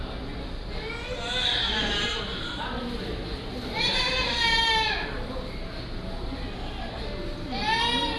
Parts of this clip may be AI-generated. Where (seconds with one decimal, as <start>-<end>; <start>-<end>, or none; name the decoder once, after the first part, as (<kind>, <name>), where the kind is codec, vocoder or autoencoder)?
2.3-4.7 (vocoder, BigVGAN v2)